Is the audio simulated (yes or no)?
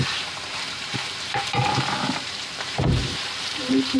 yes